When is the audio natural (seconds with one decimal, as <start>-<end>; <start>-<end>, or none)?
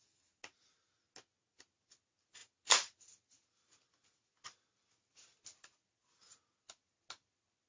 0.0-7.7